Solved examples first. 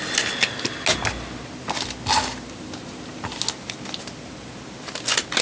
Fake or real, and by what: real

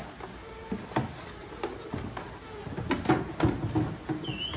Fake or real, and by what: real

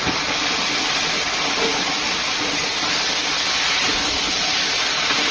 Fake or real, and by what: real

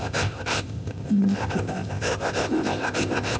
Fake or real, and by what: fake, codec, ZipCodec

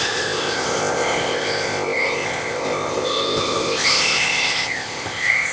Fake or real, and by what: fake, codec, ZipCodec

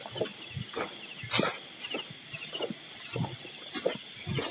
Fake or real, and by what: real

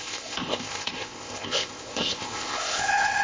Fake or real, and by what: fake, codec, ZipCodec